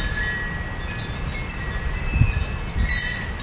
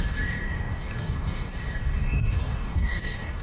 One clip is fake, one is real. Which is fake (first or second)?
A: second